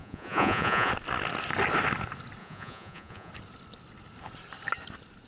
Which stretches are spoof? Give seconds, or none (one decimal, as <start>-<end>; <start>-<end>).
0.0-0.9; 2.4-3.3